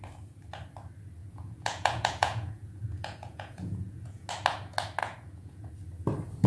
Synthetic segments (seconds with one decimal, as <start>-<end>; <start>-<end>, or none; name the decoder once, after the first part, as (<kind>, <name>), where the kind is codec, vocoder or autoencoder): 1.2-4.3 (vocoder, Vocos); 5.0-5.7